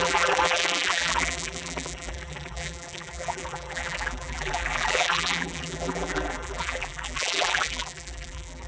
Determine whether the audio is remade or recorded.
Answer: remade